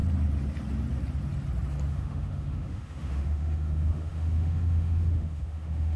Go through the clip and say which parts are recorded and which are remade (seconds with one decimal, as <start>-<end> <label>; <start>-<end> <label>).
0.0-1.9 recorded; 1.9-6.0 remade